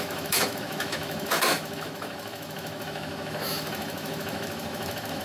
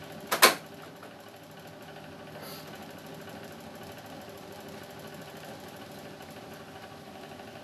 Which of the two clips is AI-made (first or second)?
first